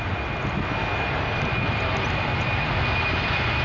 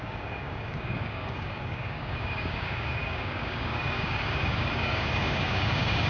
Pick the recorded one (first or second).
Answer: first